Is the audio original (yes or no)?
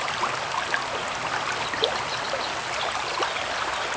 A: yes